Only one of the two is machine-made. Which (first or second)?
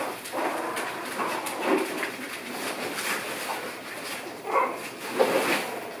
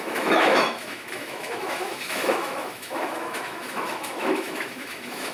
second